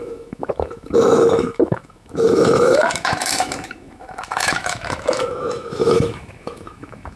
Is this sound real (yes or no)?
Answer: no